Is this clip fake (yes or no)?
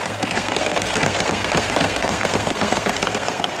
yes